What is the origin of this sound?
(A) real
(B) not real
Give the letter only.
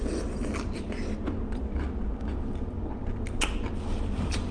A